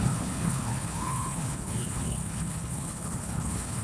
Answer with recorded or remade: remade